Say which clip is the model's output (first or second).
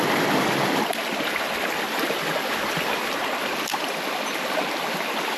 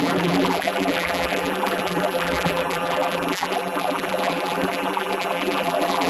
second